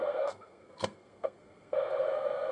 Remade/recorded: remade